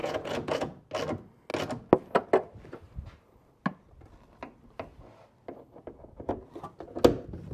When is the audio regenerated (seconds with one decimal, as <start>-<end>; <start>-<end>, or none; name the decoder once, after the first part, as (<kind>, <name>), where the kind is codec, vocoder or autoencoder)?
0.0-0.8 (vocoder, Vocos)